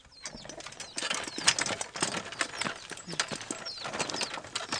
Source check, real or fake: real